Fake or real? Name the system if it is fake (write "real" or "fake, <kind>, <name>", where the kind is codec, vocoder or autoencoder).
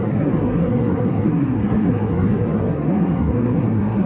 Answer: fake, codec, SNAC